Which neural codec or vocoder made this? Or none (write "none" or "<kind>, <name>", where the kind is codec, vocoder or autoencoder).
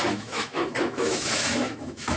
autoencoder, DAC-VAE